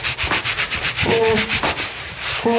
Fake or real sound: fake